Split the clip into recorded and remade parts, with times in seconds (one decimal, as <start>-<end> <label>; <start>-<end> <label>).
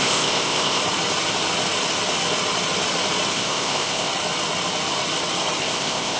0.0-0.8 remade; 0.8-3.3 recorded; 3.3-4.1 remade; 4.1-5.6 recorded; 5.6-6.2 remade